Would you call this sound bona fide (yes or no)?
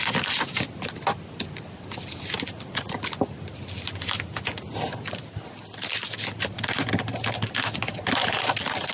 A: yes